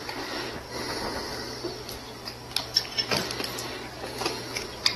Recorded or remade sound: recorded